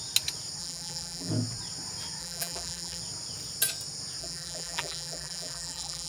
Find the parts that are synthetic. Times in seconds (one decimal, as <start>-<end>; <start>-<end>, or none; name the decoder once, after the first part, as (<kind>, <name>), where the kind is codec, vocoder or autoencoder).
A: 0.6-1.3 (vocoder, BigVGAN v2); 2.2-3.0; 4.2-6.1